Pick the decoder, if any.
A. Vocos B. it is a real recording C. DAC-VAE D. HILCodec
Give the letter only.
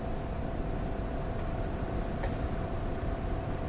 B